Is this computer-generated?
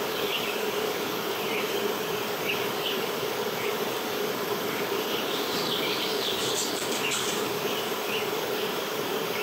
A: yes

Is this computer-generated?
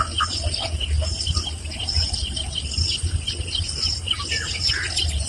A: no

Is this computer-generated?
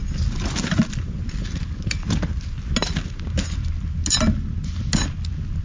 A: no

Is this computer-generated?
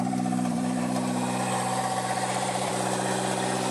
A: yes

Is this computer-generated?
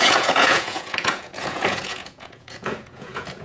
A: yes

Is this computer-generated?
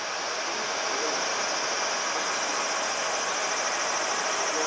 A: no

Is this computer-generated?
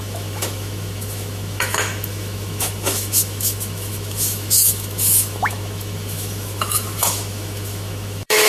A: yes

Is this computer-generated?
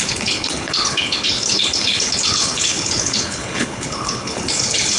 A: yes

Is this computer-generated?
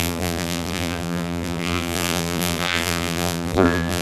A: yes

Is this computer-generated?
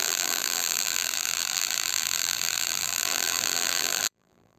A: yes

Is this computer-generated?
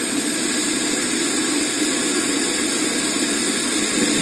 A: no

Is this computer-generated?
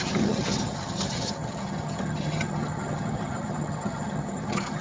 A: yes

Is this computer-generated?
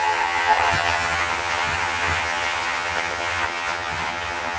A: yes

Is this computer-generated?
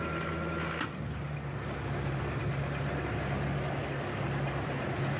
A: no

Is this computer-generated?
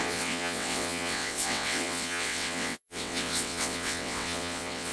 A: yes